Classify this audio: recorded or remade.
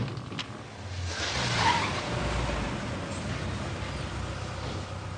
recorded